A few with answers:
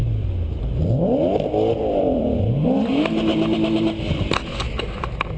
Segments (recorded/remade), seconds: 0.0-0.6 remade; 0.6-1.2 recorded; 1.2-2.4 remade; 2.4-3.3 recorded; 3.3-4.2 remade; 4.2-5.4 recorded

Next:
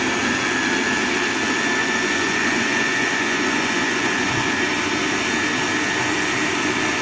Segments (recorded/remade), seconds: 0.0-1.8 recorded; 1.8-4.5 remade; 4.5-7.0 recorded

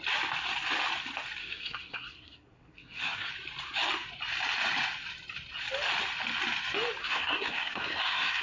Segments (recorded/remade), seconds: 0.0-1.4 recorded; 1.4-3.3 remade; 3.3-7.0 recorded; 7.0-8.4 remade

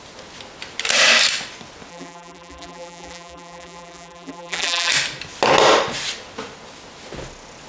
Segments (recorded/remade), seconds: 0.0-1.9 recorded; 1.9-4.9 remade; 4.9-7.7 recorded